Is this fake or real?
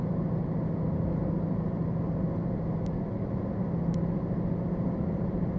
real